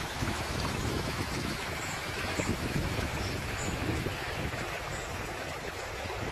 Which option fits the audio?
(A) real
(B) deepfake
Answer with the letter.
B